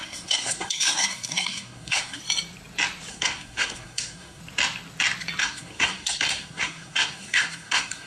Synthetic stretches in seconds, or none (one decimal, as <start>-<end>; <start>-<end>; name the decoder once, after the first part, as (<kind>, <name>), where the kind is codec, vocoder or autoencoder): 0.0-2.2 (codec, SNAC); 3.1-4.4; 5.4-8.1